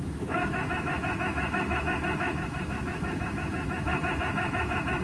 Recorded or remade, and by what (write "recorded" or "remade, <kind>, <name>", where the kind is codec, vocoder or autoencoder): remade, autoencoder, DAC-VAE